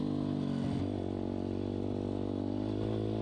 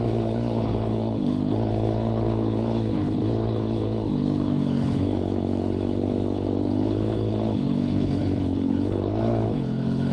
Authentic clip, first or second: first